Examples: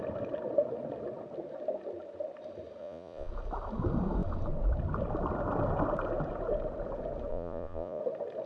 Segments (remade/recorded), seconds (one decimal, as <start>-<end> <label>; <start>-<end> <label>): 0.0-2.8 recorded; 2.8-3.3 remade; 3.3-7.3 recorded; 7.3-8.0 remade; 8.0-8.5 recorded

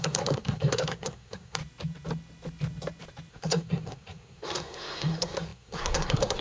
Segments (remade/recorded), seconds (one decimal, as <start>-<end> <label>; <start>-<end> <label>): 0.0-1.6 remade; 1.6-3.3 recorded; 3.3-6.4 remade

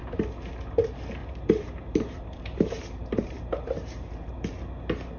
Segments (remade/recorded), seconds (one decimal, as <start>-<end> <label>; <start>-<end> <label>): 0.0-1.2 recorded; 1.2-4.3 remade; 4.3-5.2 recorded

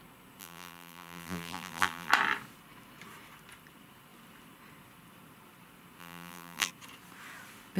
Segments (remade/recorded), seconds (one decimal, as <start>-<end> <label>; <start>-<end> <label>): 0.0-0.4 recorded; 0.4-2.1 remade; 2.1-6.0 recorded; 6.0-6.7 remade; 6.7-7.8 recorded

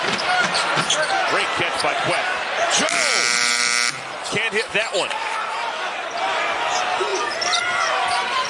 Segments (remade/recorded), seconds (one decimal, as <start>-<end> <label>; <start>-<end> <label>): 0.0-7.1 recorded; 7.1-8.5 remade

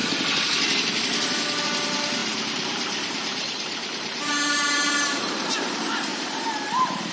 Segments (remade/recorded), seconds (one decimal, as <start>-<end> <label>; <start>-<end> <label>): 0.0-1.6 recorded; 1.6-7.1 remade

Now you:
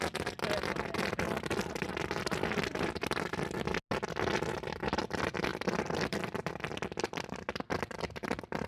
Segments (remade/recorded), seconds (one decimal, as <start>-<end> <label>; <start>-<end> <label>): 0.0-5.5 recorded; 5.5-7.3 remade; 7.3-8.7 recorded

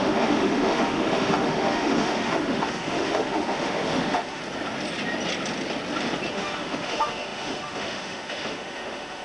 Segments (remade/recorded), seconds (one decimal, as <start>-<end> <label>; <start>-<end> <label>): 0.0-4.4 remade; 4.4-6.3 recorded; 6.3-9.2 remade